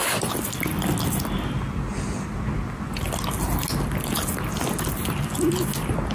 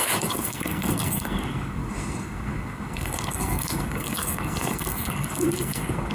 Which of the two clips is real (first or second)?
first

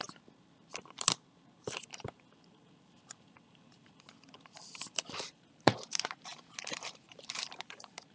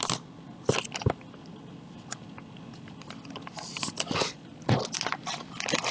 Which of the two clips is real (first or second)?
second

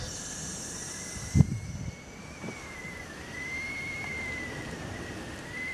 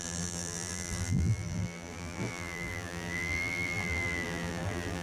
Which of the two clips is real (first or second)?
first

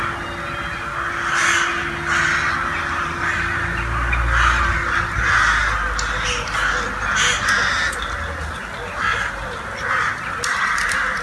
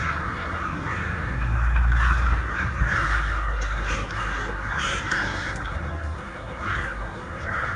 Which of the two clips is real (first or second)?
first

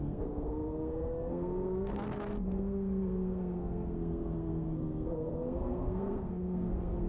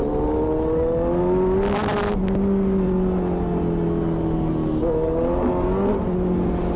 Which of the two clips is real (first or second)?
second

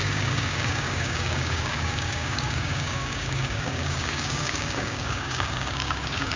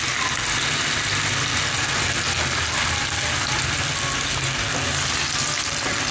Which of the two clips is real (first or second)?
second